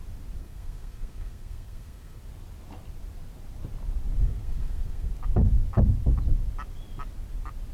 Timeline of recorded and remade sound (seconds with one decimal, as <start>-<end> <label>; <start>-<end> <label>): 0.0-0.4 recorded; 0.4-2.2 remade; 2.2-4.2 recorded; 4.2-5.1 remade; 5.1-7.7 recorded